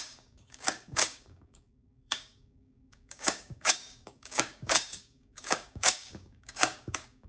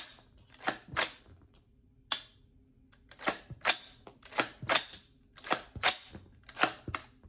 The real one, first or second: second